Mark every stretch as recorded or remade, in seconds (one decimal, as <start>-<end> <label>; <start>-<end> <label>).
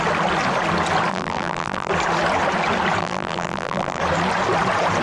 0.0-1.1 recorded; 1.1-1.9 remade; 1.9-3.0 recorded; 3.0-4.0 remade; 4.0-5.0 recorded